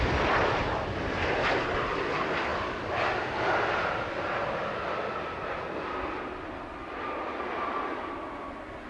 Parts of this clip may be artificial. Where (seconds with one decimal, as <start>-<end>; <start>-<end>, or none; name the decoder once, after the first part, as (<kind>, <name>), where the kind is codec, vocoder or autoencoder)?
none